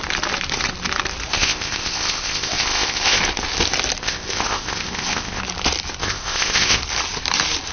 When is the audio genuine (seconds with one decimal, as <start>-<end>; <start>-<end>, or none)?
0.0-1.3; 3.2-4.0; 5.4-6.0; 6.8-7.7